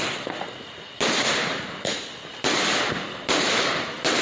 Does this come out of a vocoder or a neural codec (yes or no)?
no